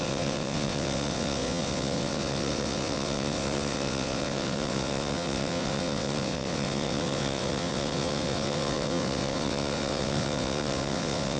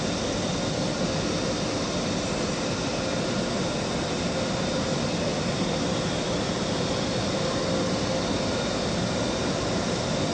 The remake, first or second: first